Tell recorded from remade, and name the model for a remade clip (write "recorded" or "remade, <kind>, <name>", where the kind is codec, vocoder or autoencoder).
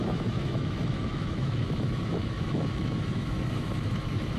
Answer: remade, autoencoder, DAC-VAE